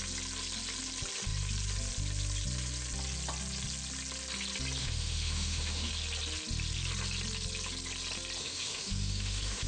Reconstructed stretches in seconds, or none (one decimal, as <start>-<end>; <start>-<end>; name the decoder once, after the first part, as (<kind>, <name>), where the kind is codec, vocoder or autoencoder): 4.8-5.9 (autoencoder, DAC-VAE); 8.4-9.7